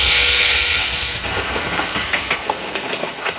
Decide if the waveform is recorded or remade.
remade